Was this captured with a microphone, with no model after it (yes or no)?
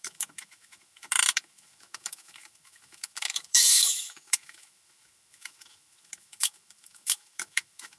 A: no